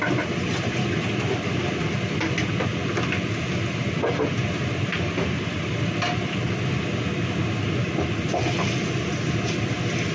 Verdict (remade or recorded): recorded